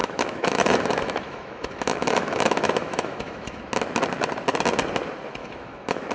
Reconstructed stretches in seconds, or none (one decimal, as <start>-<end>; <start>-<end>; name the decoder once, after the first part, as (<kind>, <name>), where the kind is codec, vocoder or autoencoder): 0.0-3.6 (autoencoder, DAC-VAE); 5.4-6.1